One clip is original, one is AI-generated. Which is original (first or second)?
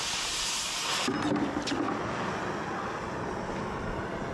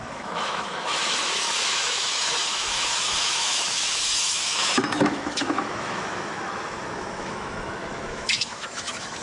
first